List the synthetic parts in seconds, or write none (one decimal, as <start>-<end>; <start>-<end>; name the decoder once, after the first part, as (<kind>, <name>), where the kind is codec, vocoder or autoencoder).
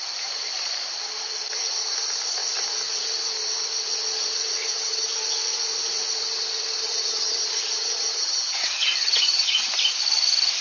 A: 4.6-5.1 (vocoder, HiFi-GAN); 6.8-9.7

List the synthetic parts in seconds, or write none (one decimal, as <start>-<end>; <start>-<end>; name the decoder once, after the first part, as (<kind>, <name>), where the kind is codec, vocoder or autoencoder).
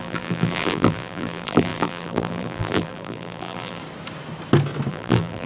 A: 0.0-3.8 (vocoder, BigVGAN v2); 4.9-5.5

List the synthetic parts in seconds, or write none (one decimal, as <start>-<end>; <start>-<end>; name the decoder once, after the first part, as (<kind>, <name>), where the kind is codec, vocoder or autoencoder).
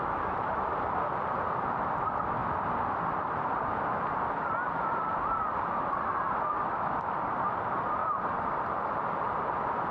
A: none